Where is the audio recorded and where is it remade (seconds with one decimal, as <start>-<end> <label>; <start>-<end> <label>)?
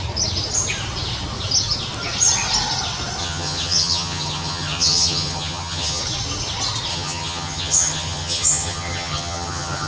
0.0-3.2 recorded; 3.2-6.0 remade; 6.0-6.9 recorded; 6.9-9.9 remade